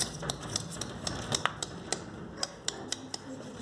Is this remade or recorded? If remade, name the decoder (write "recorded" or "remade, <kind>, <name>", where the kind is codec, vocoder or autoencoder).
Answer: recorded